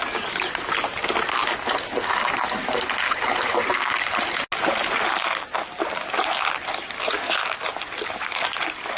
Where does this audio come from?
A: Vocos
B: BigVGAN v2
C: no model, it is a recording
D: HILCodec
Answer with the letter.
C